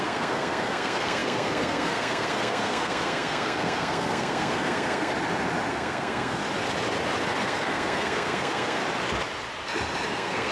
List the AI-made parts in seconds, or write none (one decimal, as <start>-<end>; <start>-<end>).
0.0-5.1; 5.7-6.4; 7.4-8.8; 10.1-10.5